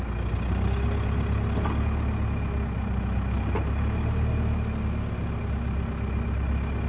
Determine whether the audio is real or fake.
real